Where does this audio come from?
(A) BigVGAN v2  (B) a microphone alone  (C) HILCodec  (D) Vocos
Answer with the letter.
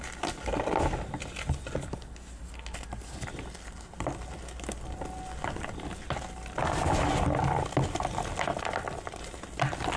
B